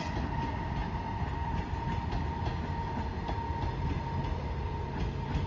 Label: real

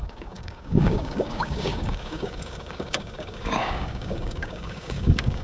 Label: fake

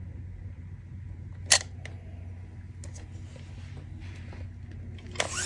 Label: real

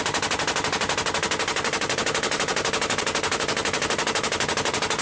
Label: real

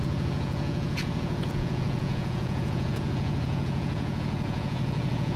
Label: fake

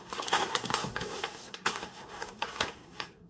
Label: fake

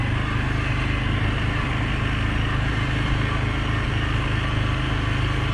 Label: real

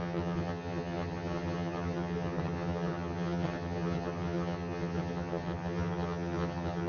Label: fake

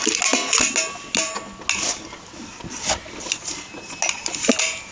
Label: real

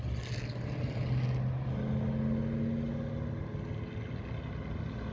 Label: real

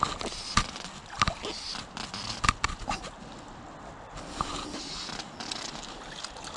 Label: real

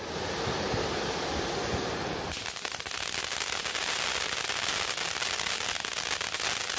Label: real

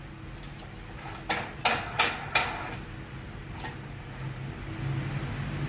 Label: real